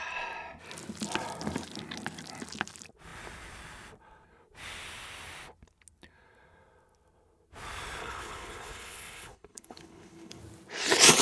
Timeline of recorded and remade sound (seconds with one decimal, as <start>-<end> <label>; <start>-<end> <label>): 0.0-8.0 recorded; 8.0-10.4 remade; 10.4-11.2 recorded